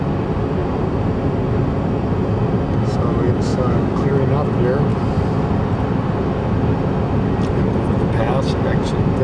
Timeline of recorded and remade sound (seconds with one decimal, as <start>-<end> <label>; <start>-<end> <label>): 0.0-3.5 recorded; 3.5-4.1 remade; 4.1-9.2 recorded